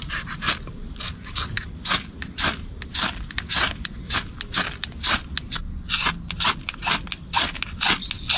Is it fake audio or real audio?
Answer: real